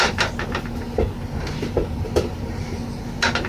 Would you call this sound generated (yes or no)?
no